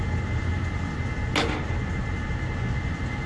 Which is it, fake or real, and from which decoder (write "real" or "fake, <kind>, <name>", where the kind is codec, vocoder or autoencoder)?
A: real